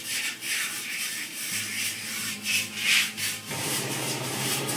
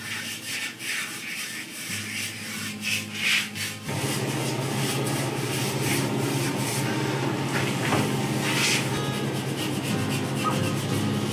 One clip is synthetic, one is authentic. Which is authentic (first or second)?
second